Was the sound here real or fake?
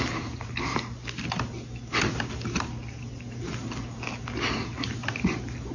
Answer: real